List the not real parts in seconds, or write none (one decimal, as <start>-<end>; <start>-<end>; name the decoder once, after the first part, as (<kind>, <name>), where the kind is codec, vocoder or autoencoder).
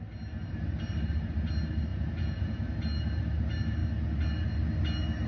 1.9-2.7 (vocoder, Vocos)